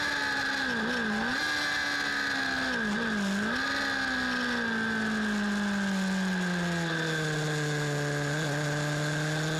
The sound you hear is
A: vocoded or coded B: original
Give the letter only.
B